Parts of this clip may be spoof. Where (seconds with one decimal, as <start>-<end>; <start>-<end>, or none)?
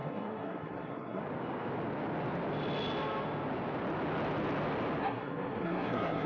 0.0-1.2; 5.0-6.3